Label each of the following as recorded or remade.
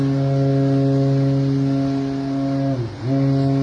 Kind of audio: recorded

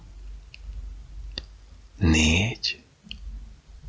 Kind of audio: recorded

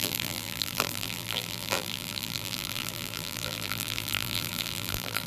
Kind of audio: remade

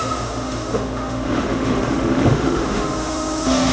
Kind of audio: remade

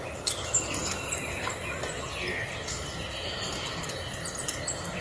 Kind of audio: recorded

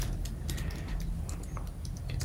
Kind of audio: recorded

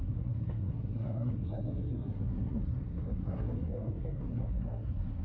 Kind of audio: remade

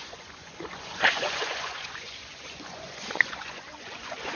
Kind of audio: remade